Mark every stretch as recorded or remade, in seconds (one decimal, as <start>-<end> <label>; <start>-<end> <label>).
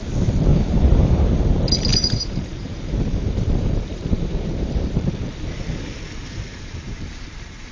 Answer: 0.0-0.5 recorded; 0.5-1.4 remade; 1.4-1.9 recorded; 1.9-4.9 remade; 4.9-6.5 recorded; 6.5-7.7 remade